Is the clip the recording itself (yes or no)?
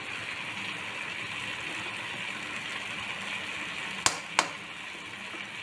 yes